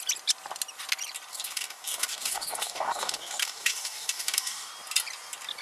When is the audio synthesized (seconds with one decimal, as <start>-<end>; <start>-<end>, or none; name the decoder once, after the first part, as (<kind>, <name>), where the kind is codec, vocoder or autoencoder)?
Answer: 1.3-4.7 (codec, DAC)